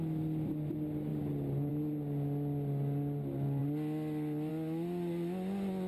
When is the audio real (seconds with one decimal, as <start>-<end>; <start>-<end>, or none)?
0.0-5.9

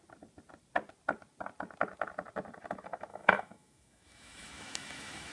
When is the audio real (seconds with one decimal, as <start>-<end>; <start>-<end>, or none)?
0.0-3.1

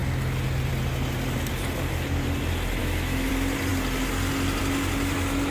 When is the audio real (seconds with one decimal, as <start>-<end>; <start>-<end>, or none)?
0.0-2.8; 3.3-5.5

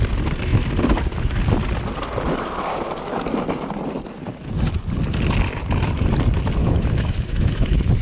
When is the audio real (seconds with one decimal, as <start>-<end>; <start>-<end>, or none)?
0.0-6.6

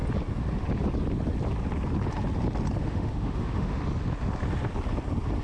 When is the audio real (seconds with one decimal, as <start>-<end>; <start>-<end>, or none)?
0.0-2.8; 3.8-5.4

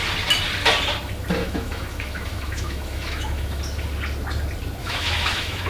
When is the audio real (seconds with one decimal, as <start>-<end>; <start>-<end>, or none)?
0.0-1.4; 3.6-4.8

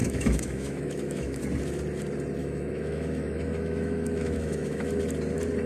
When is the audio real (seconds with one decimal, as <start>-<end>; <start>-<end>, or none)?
1.4-2.4; 5.0-5.7

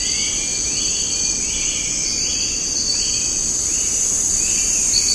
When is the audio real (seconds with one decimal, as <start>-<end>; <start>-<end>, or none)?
0.0-5.1